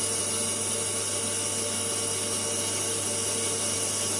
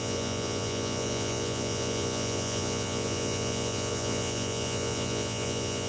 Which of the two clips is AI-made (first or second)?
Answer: second